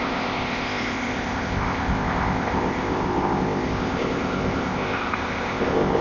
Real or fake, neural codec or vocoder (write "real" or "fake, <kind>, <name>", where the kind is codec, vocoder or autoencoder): fake, codec, ZipCodec